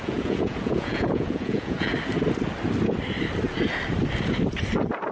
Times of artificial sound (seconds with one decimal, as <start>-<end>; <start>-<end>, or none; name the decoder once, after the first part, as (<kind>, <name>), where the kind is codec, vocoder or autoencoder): 0.0-1.9 (vocoder, Vocos)

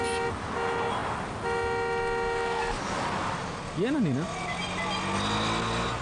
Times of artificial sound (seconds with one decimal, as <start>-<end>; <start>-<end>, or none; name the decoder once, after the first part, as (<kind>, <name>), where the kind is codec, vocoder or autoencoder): none

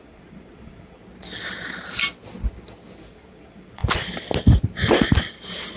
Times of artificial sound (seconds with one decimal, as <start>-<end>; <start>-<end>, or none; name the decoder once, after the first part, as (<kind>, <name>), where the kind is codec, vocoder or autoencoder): 0.0-1.0 (vocoder, Vocos); 3.0-3.8

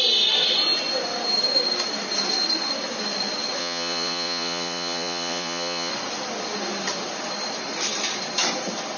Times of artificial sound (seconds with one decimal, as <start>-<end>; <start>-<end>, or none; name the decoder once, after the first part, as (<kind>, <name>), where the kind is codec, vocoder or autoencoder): 3.6-5.9 (vocoder, Vocos)

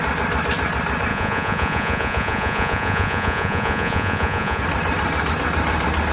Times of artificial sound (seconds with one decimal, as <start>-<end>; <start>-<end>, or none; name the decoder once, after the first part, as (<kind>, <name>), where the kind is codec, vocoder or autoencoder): 1.1-4.6 (vocoder, Vocos)